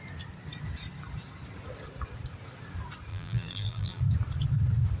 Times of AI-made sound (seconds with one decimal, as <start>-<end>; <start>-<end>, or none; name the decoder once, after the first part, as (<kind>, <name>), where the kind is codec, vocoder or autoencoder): 3.1-4.0 (vocoder, BigVGAN v2)